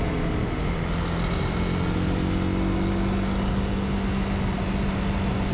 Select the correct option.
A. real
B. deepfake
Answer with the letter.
A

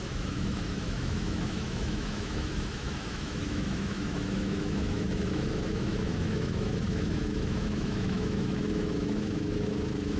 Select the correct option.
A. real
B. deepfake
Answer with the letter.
B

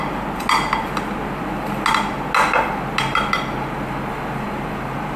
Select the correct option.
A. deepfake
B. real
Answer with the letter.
B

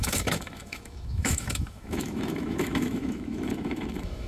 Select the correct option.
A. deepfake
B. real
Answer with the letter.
A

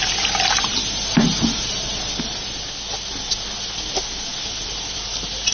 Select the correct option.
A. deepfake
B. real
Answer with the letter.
B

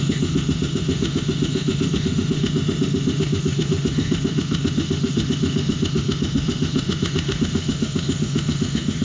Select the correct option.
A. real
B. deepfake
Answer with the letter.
B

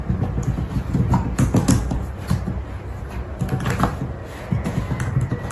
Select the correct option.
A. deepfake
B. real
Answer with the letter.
B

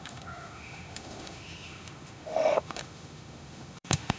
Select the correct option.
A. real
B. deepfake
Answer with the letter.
B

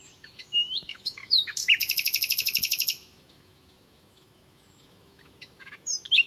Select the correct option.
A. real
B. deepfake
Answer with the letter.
B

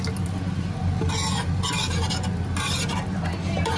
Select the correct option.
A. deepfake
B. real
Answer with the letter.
B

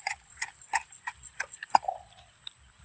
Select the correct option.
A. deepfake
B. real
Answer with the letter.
B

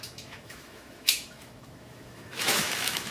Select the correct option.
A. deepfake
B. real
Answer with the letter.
A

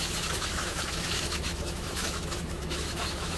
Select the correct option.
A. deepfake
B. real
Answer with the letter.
A